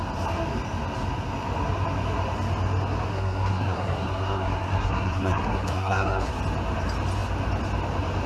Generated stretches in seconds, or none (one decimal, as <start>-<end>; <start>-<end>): 3.1-6.3

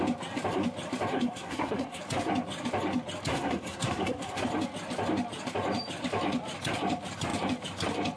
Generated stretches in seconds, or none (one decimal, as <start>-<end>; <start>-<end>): 1.1-2.0; 3.3-4.4

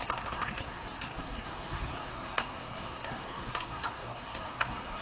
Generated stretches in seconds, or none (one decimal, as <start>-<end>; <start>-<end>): 0.0-5.0

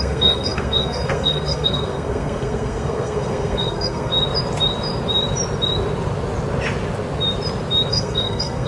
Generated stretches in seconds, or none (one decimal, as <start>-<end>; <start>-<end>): 0.0-4.1; 7.9-8.7

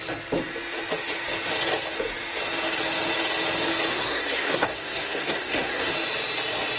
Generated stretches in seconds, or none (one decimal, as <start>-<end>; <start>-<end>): 3.9-5.9

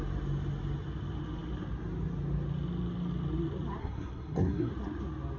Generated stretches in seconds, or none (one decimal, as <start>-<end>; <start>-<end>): 3.8-4.7